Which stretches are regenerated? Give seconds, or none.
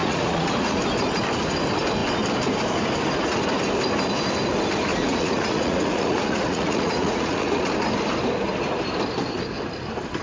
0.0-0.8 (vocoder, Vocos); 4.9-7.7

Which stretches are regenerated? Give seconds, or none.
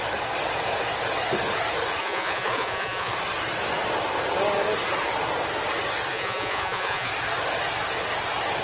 2.0-3.1 (vocoder, Vocos); 6.1-7.1